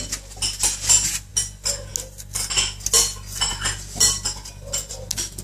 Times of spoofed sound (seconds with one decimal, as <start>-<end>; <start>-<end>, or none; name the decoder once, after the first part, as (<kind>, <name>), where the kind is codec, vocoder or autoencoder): none